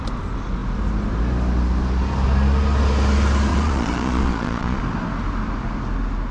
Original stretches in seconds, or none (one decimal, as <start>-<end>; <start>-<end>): 0.0-3.5; 4.8-6.3